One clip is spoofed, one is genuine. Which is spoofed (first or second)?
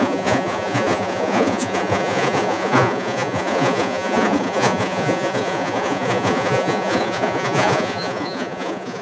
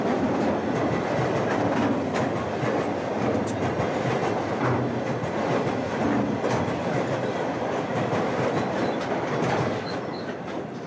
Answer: first